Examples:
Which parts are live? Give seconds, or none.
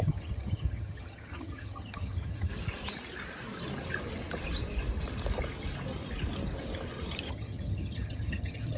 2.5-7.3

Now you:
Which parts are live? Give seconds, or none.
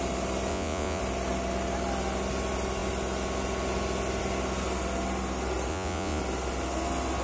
0.0-0.5; 1.0-5.7; 6.2-7.2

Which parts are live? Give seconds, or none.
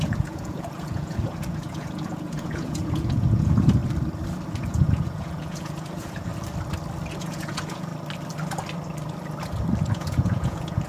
3.8-4.5; 6.3-7.2; 7.9-9.8